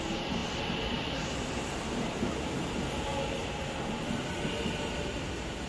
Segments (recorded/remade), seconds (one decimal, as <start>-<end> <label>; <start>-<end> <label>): 0.0-5.7 recorded